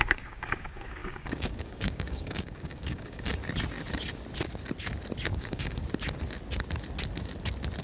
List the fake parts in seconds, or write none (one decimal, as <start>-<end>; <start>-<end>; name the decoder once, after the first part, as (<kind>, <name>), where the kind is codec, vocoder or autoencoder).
0.0-3.4 (codec, DAC); 5.3-5.8